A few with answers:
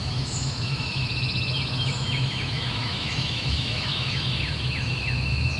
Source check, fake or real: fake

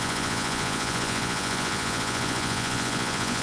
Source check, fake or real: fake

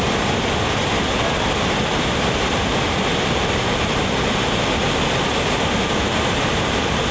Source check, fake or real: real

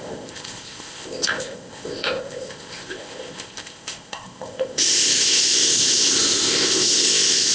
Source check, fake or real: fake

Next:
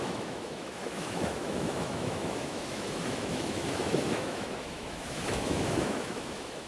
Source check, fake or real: fake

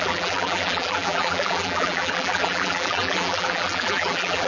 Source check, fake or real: fake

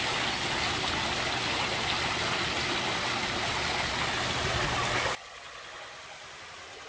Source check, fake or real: real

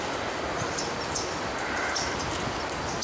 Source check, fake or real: real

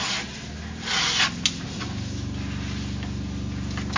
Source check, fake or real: real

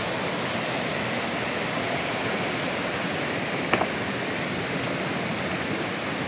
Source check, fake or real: real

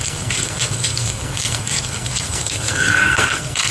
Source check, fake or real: fake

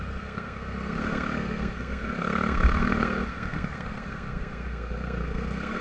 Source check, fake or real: fake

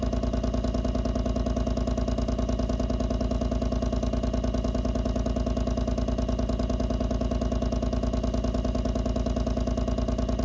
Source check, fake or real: real